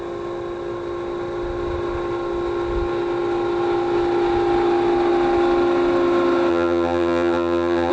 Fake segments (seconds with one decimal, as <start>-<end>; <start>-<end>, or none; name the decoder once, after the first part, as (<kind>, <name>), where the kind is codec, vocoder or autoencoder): 6.5-7.9 (vocoder, HiFi-GAN)